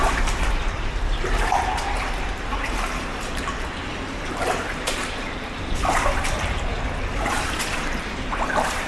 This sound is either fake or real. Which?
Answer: fake